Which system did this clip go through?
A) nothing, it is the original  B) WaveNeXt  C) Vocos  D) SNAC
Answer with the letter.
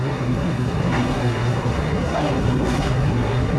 D